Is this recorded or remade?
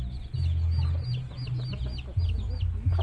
recorded